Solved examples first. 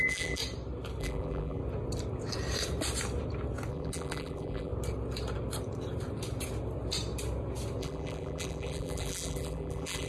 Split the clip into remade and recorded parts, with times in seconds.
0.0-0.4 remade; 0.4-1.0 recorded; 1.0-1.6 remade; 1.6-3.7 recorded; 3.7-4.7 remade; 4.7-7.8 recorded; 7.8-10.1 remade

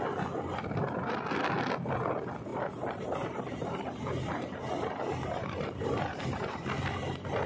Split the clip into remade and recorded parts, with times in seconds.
0.0-2.5 recorded; 2.5-6.5 remade; 6.5-7.5 recorded

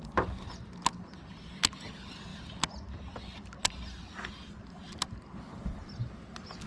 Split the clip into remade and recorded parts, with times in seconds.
0.0-6.7 recorded

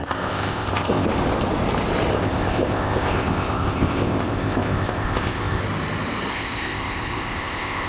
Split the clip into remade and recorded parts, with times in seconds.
0.0-1.1 remade; 1.1-2.1 recorded; 2.1-5.6 remade; 5.6-6.3 recorded; 6.3-7.9 remade

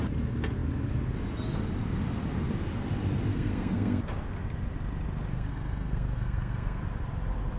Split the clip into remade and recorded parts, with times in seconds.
0.0-3.3 recorded; 3.3-4.0 remade; 4.0-5.3 recorded; 5.3-6.8 remade; 6.8-7.6 recorded

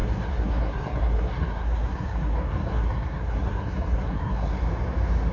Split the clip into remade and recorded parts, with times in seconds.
0.0-4.6 remade; 4.6-5.3 recorded

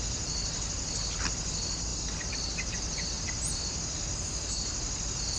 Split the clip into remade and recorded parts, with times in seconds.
0.0-5.4 recorded